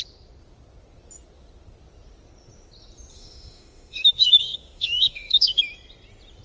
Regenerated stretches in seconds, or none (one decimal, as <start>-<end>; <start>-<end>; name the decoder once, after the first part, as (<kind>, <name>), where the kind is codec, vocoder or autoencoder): 3.1-5.6 (autoencoder, DAC-VAE)